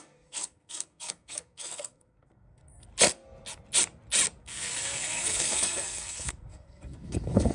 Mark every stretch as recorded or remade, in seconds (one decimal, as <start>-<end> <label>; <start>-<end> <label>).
0.0-2.9 remade; 2.9-4.4 recorded; 4.4-7.5 remade